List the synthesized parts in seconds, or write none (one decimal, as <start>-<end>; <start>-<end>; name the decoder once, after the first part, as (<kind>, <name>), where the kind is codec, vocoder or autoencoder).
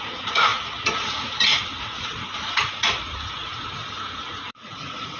0.0-5.2 (vocoder, Vocos)